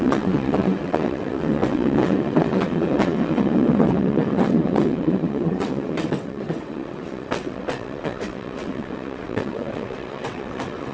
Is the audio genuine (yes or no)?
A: no